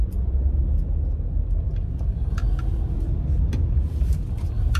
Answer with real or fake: real